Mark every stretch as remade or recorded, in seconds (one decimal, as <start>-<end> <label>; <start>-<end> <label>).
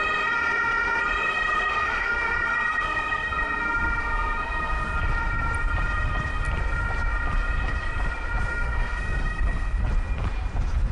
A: 0.0-1.2 recorded; 1.2-5.0 remade; 5.0-8.5 recorded; 8.5-9.8 remade; 9.8-10.9 recorded